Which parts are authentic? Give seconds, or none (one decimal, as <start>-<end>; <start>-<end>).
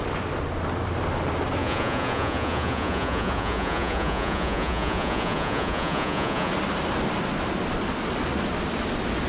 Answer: 0.0-1.6; 6.5-9.3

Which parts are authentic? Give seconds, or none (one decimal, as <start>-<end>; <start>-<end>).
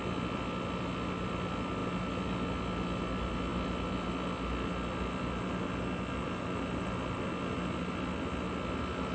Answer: 0.0-9.1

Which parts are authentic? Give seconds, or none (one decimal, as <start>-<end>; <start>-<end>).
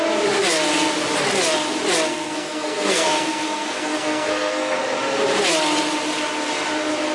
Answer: 0.0-2.1; 4.8-7.1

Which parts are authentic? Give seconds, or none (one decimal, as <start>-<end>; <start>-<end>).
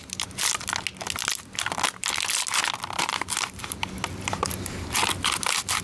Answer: 0.0-5.8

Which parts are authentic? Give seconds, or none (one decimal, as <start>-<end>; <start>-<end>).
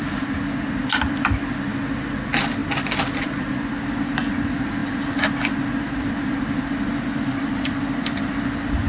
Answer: 0.0-8.9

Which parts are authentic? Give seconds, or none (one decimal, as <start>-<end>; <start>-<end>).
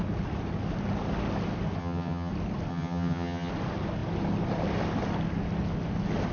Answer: 0.0-1.8; 2.3-2.7; 3.5-6.3